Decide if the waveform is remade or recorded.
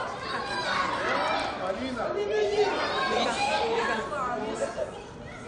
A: recorded